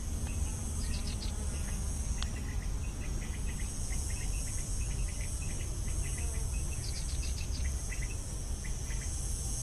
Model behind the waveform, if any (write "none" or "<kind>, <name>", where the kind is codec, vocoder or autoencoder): none